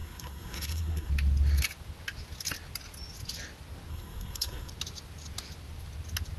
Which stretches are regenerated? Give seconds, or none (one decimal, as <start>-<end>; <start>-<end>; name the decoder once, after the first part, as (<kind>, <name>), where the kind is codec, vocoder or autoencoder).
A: 0.0-1.1 (codec, SNAC); 3.9-4.7